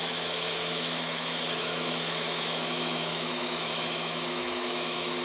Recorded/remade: remade